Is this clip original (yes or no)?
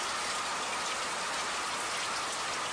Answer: yes